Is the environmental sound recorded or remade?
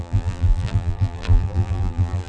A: remade